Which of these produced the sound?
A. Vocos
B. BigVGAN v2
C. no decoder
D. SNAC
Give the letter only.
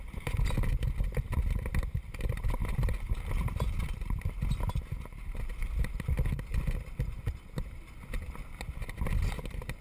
C